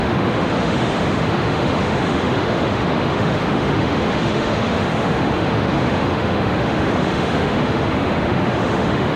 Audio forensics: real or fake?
fake